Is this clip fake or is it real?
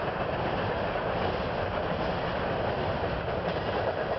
real